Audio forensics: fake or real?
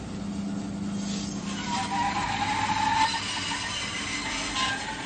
real